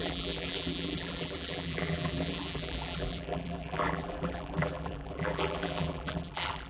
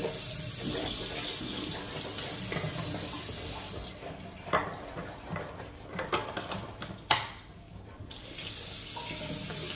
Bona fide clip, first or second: second